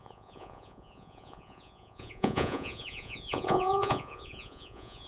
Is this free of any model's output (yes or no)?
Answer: no